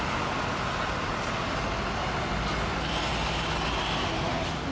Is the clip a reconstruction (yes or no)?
no